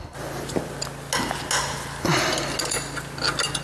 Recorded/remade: recorded